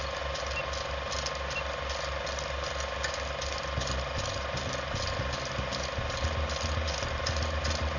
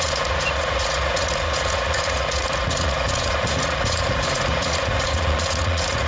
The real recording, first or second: first